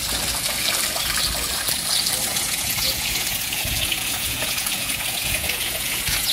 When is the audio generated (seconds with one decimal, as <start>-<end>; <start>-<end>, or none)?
2.3-6.3